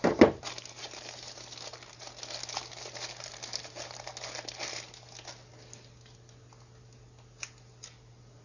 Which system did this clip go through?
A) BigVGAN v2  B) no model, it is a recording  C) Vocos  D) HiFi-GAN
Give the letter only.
B